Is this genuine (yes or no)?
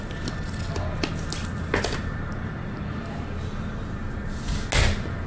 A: yes